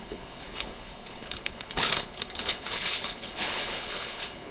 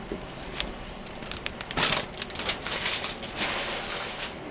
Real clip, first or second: second